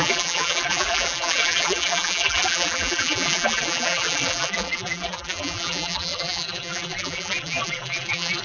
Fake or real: fake